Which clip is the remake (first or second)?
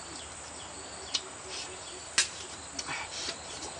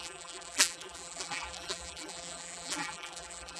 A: second